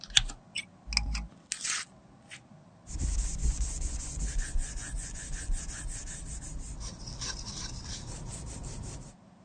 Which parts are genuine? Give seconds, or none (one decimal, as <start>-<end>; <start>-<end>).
0.0-3.4; 5.6-9.4